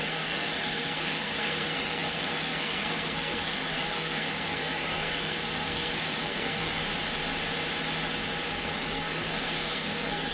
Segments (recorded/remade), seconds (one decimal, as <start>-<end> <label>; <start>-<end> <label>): 0.0-6.8 remade; 6.8-8.5 recorded; 8.5-10.3 remade